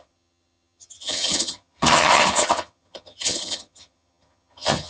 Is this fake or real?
fake